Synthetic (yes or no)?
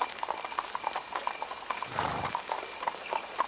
no